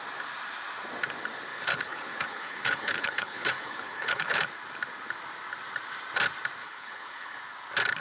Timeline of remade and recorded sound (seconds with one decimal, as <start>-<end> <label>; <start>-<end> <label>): 0.0-1.5 recorded; 1.5-4.4 remade; 4.4-6.6 recorded; 6.6-7.4 remade; 7.4-8.0 recorded